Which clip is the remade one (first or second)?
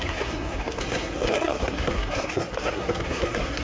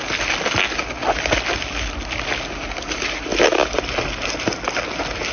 first